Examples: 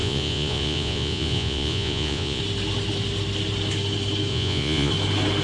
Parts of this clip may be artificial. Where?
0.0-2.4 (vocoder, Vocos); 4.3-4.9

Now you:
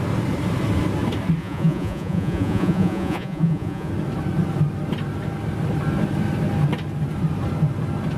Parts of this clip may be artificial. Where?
1.4-3.9 (vocoder, Vocos)

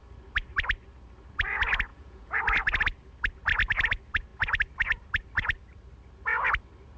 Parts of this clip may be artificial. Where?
1.9-2.4 (vocoder, Vocos)